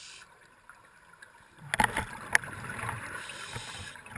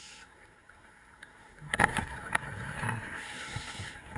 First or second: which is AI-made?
second